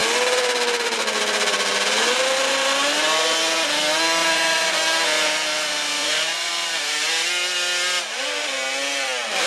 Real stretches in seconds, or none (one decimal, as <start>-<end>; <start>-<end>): 0.0-4.2; 4.8-6.0; 6.5-9.5